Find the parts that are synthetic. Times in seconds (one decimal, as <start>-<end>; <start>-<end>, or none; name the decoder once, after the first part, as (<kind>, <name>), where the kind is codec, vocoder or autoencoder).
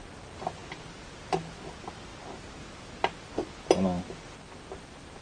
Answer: none